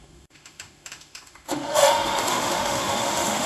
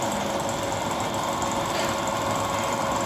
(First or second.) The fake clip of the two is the first